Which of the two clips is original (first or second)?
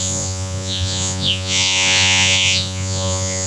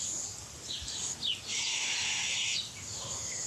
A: second